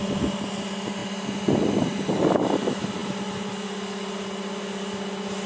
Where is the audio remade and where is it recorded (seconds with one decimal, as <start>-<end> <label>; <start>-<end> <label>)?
0.0-5.5 recorded